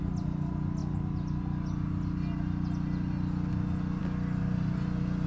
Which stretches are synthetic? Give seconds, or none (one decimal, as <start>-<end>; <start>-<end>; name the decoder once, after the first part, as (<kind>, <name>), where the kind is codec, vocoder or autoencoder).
none